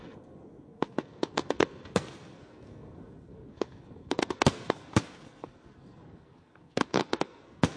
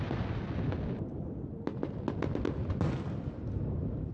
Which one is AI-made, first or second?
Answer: first